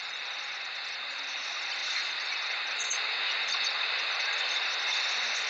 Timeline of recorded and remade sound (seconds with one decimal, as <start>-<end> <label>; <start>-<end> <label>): 0.0-5.5 recorded